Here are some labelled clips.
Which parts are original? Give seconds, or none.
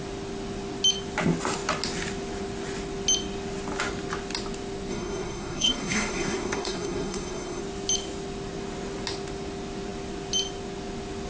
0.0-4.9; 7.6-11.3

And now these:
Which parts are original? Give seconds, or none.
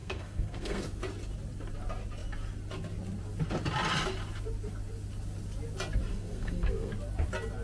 0.8-6.1; 6.9-7.6